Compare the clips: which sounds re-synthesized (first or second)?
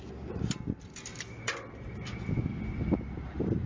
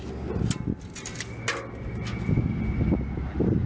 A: first